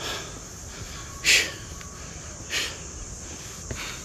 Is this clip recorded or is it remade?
recorded